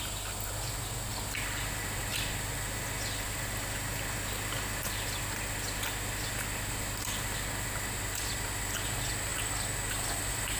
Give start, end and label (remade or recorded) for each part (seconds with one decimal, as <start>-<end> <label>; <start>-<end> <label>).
0.0-10.6 recorded